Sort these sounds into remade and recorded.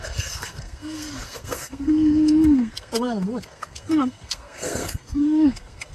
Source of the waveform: remade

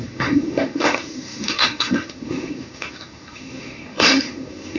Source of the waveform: remade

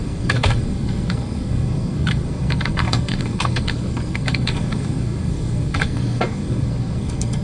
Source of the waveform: remade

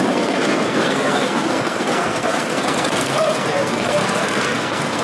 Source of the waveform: remade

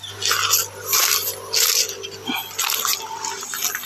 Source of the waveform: recorded